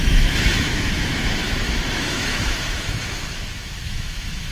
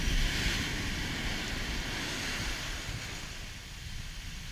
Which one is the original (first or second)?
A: second